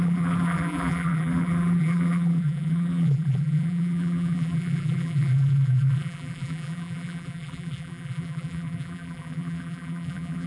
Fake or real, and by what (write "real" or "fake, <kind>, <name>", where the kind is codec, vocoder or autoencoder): fake, vocoder, BigVGAN v2